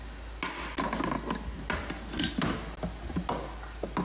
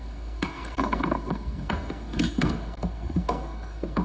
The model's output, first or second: second